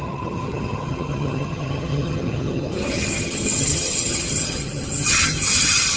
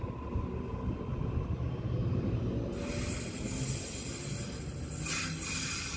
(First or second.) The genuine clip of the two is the second